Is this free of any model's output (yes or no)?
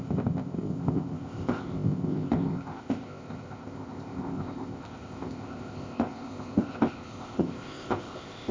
no